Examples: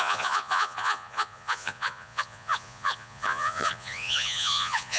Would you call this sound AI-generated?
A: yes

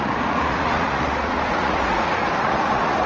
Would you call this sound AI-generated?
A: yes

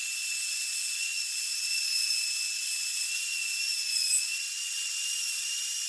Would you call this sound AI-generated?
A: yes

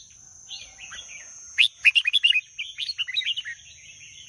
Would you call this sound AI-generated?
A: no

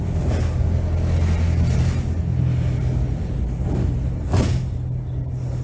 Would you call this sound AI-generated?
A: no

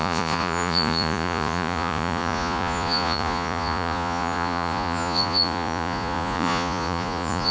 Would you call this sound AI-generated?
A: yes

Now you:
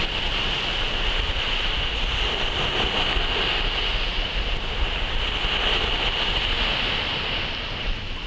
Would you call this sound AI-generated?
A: no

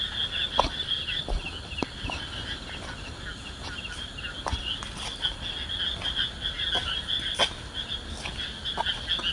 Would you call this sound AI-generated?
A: no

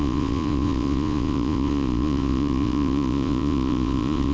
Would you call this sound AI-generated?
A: yes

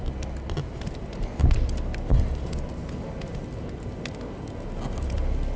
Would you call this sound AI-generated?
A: no